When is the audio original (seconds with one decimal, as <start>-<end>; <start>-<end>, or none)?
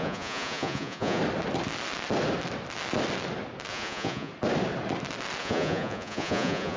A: 1.2-3.7; 4.3-5.4